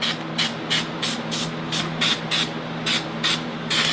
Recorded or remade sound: recorded